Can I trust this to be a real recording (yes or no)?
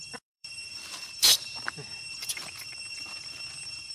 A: no